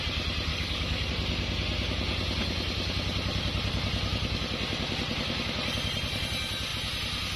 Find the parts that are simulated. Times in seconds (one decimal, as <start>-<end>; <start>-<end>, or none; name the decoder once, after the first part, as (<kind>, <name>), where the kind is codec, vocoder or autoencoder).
0.5-1.1 (codec, DAC)